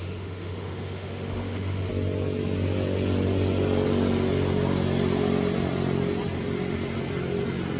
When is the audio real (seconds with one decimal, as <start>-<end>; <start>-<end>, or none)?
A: 1.9-7.8